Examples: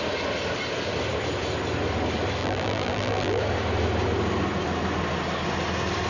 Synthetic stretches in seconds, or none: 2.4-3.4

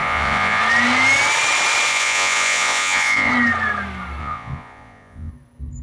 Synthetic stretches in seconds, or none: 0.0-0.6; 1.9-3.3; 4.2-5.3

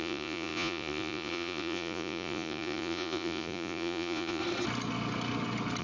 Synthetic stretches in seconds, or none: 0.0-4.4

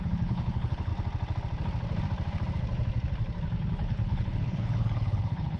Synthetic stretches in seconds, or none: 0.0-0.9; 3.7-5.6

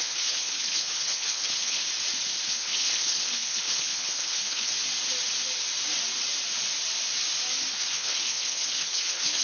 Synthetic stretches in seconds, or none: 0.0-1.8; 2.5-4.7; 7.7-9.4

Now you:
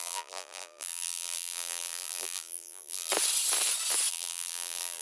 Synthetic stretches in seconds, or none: 0.0-3.1; 4.1-5.0